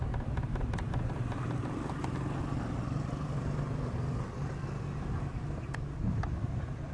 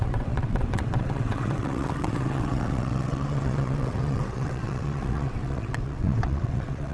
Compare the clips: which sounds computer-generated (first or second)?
second